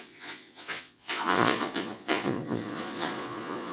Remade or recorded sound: remade